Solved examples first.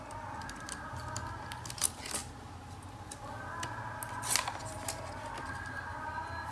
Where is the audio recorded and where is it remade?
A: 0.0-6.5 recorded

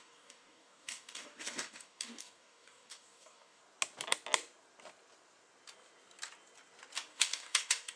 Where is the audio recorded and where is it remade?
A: 0.0-3.6 remade; 3.6-7.1 recorded; 7.1-8.0 remade

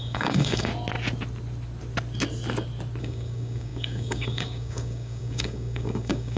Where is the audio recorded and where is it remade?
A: 0.0-0.7 remade; 0.7-3.0 recorded; 3.0-6.4 remade

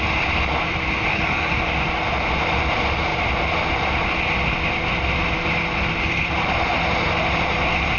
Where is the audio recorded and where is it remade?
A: 0.0-1.1 recorded; 1.1-1.7 remade; 1.7-8.0 recorded

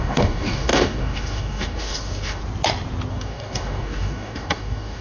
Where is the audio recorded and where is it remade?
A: 0.0-2.4 remade; 2.4-3.1 recorded; 3.1-5.0 remade

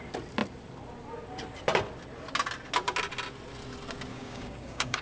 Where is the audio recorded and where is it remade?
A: 0.0-4.1 recorded; 4.1-5.0 remade